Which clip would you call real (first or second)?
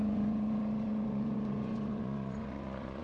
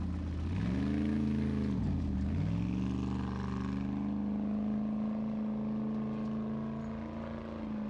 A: second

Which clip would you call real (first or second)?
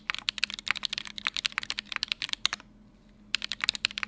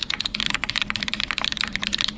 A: first